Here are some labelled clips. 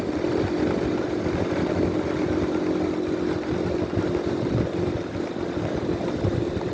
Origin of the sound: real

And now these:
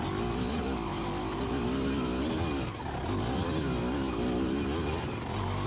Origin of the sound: real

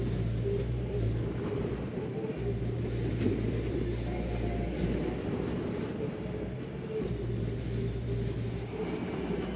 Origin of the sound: real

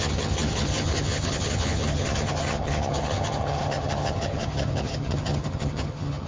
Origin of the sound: fake